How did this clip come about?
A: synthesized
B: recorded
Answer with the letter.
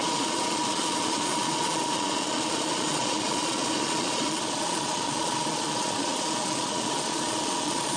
A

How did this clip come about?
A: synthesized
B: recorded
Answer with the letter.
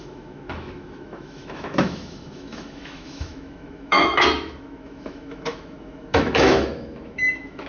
A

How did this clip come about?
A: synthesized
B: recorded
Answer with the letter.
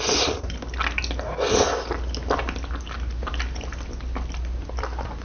B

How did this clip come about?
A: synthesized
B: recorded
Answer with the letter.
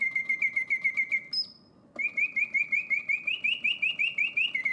B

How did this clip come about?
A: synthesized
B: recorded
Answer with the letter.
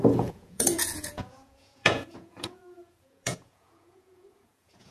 A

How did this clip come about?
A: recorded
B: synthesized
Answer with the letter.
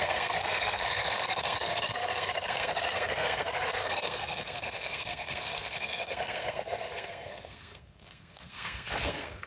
B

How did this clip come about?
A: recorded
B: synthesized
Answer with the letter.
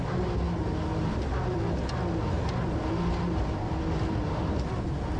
A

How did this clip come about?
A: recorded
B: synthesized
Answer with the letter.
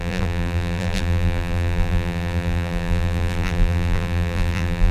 B